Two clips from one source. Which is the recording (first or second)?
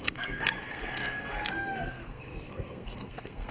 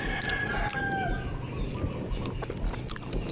second